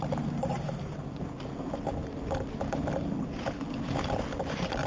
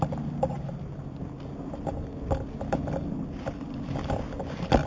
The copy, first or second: first